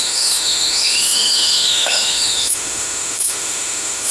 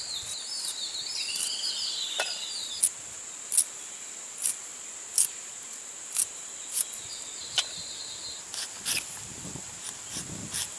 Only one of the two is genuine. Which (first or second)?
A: second